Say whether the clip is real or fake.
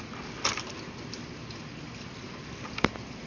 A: real